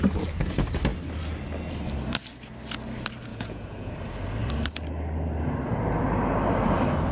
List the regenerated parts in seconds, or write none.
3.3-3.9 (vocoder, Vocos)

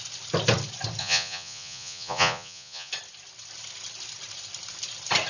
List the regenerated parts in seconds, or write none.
1.0-2.9 (vocoder, Vocos)

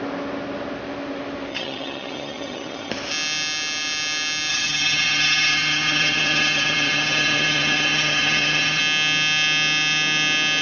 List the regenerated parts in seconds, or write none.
1.5-2.9 (vocoder, HiFi-GAN); 4.5-8.8

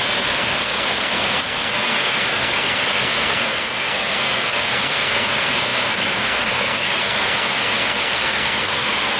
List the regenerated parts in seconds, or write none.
0.0-9.2 (codec, SNAC)

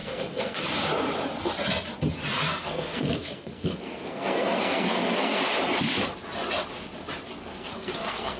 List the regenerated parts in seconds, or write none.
0.0-0.6 (codec, SNAC); 2.5-5.4; 7.4-8.4